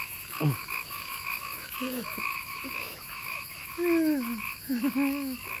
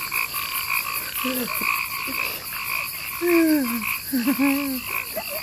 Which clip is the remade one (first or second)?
first